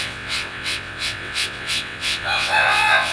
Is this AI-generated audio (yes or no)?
yes